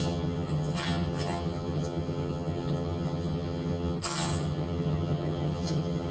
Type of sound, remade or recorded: remade